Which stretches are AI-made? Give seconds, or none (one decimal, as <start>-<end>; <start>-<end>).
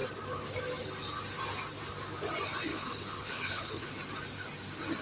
2.7-3.9